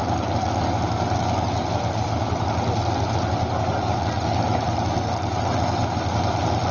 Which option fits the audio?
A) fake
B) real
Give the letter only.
B